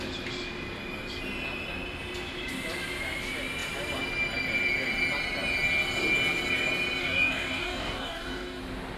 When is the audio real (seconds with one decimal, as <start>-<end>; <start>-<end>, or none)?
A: 0.0-7.0; 8.6-9.0